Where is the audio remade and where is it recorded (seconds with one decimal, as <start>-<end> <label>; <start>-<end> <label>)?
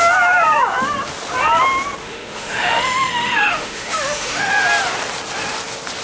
0.0-2.0 recorded; 2.0-4.5 remade; 4.5-6.0 recorded